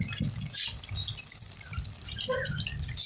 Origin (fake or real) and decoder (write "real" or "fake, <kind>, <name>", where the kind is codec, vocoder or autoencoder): real